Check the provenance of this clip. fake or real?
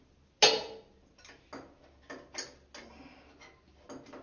real